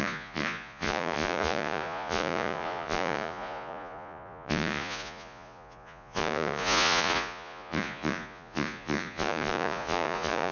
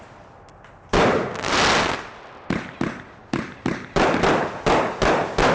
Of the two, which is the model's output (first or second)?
first